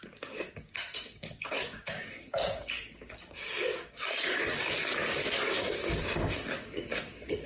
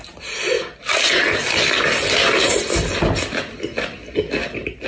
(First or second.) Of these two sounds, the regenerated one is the first